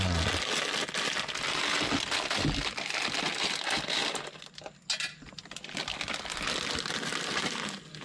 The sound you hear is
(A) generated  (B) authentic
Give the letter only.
B